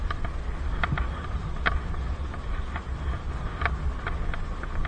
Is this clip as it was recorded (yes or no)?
yes